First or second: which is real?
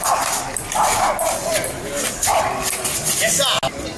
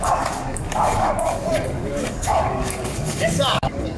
first